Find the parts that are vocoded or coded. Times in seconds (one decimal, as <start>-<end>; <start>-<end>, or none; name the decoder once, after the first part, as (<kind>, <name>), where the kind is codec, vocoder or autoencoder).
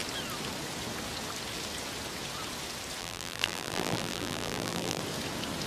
3.0-5.0 (vocoder, BigVGAN v2)